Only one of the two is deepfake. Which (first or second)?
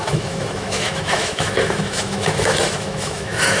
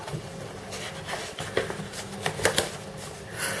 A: first